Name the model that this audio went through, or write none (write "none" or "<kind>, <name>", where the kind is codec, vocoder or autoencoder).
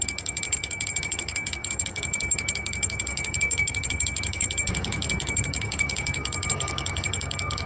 codec, DAC